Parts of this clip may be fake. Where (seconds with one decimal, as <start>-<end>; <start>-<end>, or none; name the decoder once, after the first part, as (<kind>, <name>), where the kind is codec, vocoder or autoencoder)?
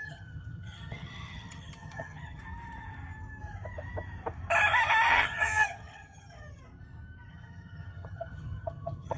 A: 0.0-2.4 (vocoder, HiFi-GAN); 5.1-6.6; 7.3-9.2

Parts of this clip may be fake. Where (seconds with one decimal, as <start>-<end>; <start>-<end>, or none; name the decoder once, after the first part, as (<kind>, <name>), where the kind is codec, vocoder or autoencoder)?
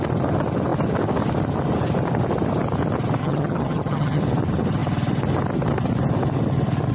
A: 3.2-4.2 (vocoder, HiFi-GAN)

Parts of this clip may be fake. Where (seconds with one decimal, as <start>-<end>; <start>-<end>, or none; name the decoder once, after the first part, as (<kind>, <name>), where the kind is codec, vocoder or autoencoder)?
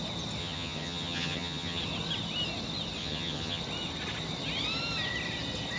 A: 0.4-1.8 (vocoder, HiFi-GAN); 3.0-3.6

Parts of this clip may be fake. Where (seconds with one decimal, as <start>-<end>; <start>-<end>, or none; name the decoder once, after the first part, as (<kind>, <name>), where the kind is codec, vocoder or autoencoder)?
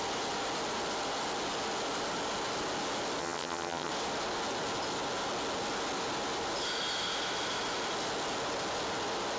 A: 3.2-3.9 (vocoder, HiFi-GAN)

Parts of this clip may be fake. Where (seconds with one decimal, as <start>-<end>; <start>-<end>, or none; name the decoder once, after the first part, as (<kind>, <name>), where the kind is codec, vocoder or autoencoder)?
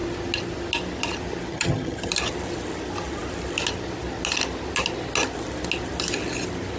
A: 1.5-2.1 (vocoder, HiFi-GAN)